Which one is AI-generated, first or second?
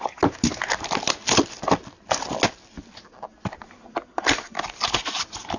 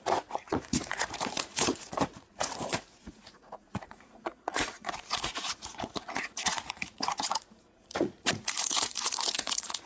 second